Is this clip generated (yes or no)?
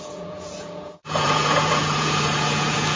yes